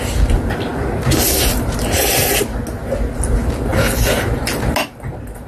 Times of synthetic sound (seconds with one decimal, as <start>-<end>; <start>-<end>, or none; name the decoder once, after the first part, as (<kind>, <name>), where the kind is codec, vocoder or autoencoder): none